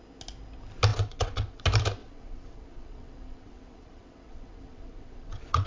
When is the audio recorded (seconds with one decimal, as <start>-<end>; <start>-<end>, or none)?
0.0-0.9; 1.6-2.0